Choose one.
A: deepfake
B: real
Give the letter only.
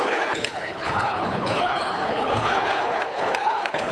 A